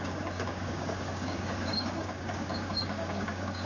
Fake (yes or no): yes